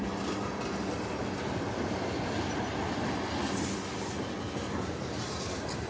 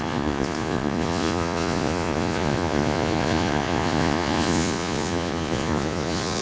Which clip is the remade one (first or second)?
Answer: second